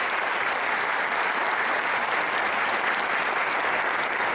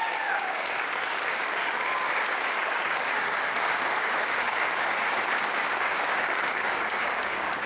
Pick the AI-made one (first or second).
second